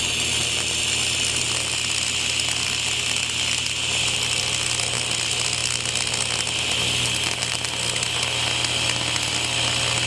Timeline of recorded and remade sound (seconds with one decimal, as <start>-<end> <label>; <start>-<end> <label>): 0.0-10.1 recorded